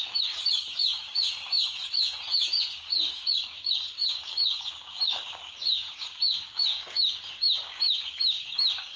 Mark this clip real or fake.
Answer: fake